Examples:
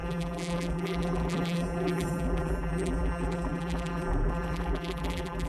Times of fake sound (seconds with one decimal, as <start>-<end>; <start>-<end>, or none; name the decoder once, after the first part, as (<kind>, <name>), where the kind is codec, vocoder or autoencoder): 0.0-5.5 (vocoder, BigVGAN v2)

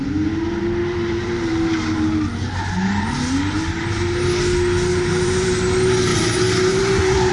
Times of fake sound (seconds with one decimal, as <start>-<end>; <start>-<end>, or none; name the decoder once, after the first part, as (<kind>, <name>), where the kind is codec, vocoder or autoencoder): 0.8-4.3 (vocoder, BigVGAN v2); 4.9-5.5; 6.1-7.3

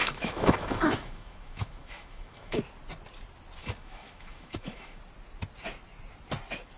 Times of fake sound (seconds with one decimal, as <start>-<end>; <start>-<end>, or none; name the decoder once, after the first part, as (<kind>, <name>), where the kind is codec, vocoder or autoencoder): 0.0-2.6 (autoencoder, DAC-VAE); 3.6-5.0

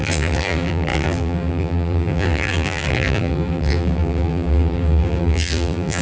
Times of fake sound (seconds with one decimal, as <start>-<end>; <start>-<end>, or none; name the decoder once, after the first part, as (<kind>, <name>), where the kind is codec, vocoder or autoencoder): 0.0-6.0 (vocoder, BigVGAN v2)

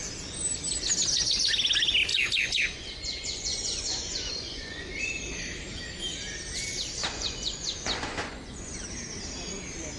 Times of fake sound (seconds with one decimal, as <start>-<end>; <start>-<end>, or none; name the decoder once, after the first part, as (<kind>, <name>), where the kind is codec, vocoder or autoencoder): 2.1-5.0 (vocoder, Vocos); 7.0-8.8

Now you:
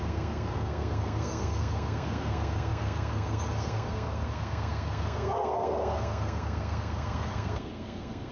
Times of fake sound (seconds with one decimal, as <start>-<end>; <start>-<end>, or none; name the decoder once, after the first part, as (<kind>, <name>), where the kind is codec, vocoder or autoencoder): 0.0-8.3 (codec, SNAC)